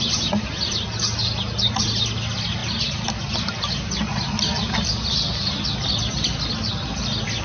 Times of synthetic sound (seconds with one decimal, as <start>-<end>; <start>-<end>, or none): none